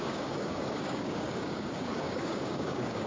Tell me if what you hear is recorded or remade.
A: remade